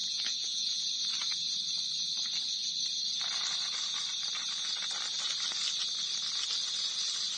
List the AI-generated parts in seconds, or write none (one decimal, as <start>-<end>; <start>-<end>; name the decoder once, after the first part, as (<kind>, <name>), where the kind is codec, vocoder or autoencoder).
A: 0.0-0.8 (vocoder, Vocos)